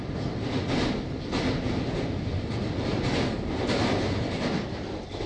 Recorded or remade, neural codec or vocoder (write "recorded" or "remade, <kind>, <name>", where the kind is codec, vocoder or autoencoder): recorded